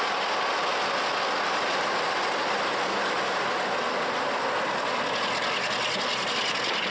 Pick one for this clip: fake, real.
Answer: real